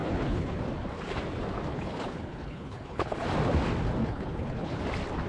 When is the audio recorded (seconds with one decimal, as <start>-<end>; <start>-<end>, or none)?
0.6-1.7; 3.2-4.0; 4.8-5.3